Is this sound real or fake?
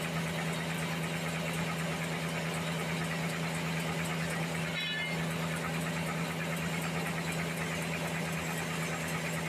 real